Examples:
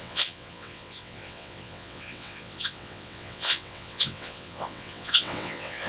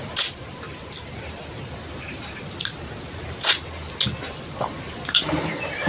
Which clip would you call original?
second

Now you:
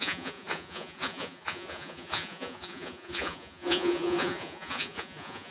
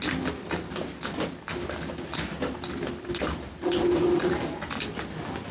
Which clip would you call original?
second